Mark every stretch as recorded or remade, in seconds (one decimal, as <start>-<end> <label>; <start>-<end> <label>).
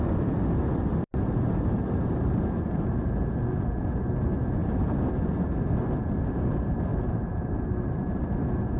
0.0-0.9 recorded; 0.9-2.8 remade; 2.8-4.6 recorded; 4.6-5.1 remade; 5.1-6.9 recorded; 6.9-8.3 remade; 8.3-8.8 recorded